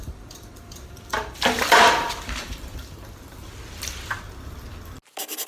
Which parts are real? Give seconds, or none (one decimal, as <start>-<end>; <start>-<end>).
3.1-5.5